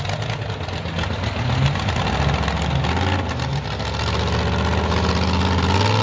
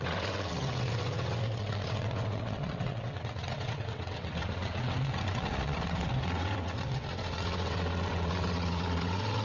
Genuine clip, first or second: first